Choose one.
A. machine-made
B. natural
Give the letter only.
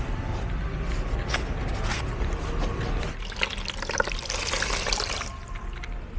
B